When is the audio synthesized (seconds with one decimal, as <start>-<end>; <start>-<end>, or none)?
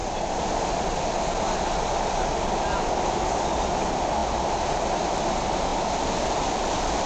5.7-7.1